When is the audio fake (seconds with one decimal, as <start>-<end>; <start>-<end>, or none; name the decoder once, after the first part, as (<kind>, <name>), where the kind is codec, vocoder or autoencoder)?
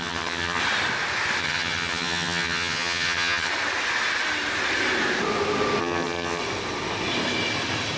0.0-0.6 (vocoder, HiFi-GAN); 1.4-3.5; 5.8-6.4